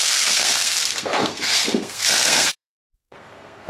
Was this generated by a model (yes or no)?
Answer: yes